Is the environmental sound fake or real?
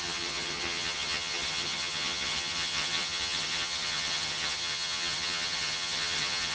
fake